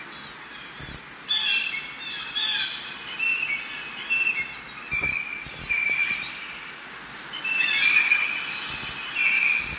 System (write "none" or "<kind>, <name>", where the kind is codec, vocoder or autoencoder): none